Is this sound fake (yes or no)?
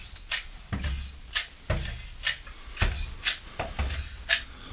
no